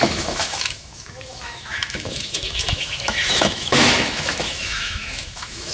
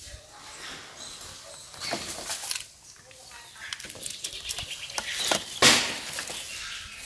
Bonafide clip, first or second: second